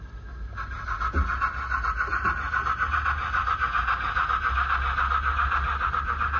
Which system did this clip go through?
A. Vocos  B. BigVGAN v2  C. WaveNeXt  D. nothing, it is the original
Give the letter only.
D